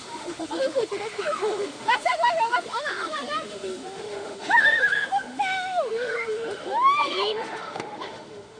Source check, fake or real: fake